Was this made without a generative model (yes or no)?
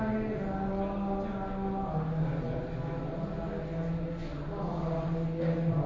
yes